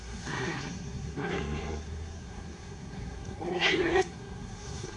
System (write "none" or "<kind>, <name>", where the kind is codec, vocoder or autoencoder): codec, SNAC